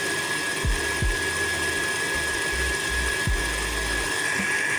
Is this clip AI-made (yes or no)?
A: no